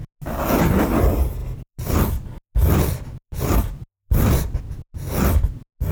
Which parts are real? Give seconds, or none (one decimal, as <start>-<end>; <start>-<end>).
0.0-1.4; 4.6-5.9